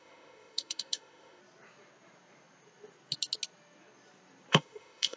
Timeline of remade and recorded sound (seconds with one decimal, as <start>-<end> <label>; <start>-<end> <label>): 0.0-1.4 remade; 1.4-4.5 recorded; 4.5-5.2 remade